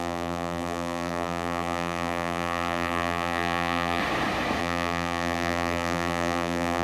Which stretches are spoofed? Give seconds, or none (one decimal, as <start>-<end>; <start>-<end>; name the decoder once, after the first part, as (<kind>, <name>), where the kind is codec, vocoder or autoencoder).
0.0-4.0 (vocoder, BigVGAN v2); 4.6-6.8